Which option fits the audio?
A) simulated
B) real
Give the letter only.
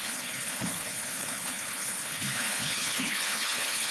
A